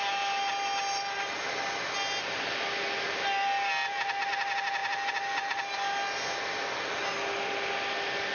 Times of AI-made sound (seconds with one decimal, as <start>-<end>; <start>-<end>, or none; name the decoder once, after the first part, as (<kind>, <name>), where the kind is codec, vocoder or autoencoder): none